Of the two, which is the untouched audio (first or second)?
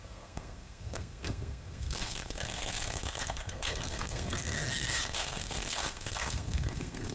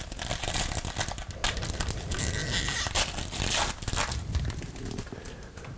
second